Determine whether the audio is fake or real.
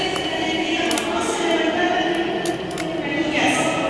real